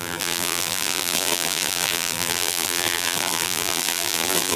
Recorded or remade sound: remade